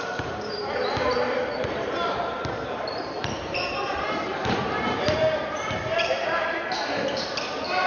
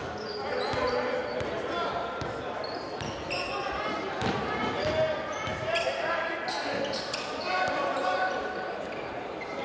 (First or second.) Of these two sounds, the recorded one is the second